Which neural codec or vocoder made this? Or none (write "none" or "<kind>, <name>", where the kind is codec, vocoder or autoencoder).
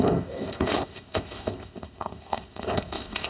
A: codec, ZipCodec